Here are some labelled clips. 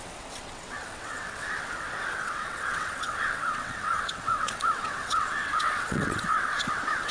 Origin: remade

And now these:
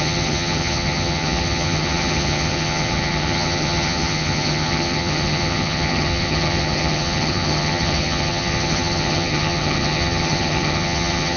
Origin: remade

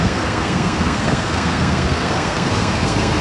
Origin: remade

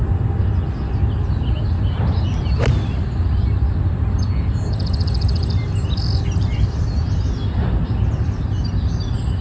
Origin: recorded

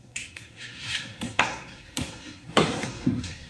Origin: remade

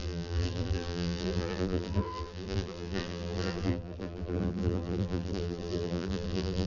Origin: remade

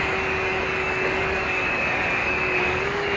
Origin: remade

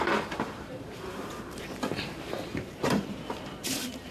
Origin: remade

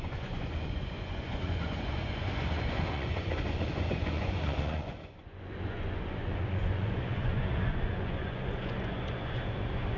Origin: remade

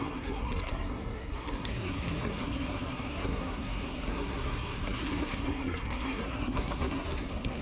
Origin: remade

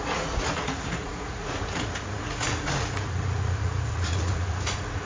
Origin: remade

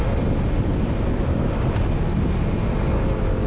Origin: recorded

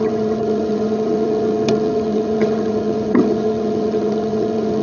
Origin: remade